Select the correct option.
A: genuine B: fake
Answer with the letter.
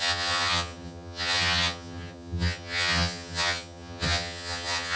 B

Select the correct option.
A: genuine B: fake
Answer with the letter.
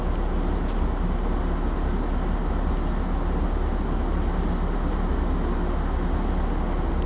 A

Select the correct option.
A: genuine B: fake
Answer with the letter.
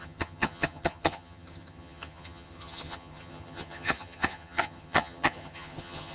B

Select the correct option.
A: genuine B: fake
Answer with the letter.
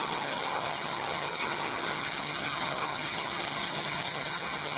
B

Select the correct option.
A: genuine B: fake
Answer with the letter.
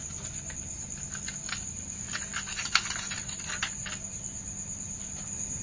A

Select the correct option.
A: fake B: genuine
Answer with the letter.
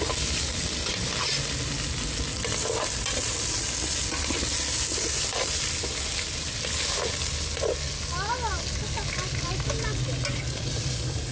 B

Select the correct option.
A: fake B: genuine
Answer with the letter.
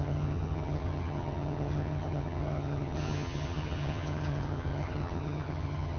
A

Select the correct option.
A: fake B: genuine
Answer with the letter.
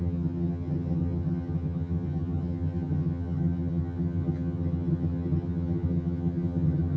A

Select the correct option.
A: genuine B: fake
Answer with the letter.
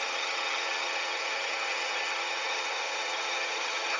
B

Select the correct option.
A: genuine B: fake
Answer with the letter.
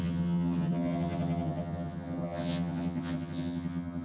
B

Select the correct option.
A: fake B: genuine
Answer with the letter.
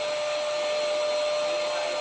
B